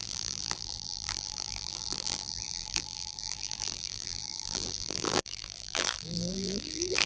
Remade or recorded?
remade